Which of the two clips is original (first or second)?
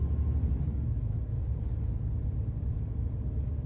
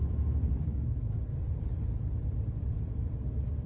first